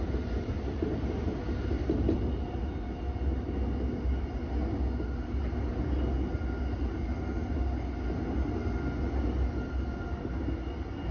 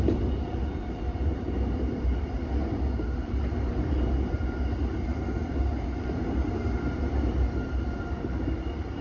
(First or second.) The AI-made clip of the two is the second